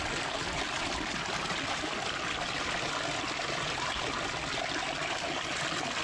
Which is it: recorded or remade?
recorded